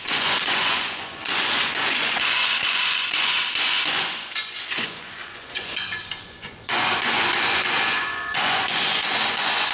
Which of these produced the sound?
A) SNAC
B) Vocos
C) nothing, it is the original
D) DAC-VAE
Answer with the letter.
B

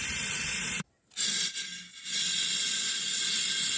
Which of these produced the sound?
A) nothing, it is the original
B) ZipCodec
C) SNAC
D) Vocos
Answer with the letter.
A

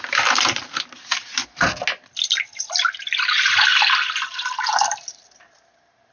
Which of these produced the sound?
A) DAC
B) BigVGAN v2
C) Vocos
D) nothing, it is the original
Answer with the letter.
D